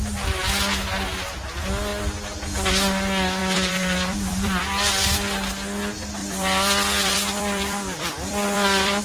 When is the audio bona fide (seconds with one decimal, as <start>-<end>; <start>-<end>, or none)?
0.0-3.4; 4.6-6.2